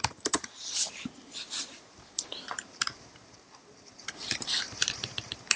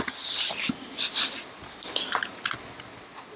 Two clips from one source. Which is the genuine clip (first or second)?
second